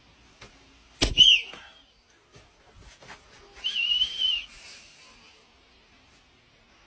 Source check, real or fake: real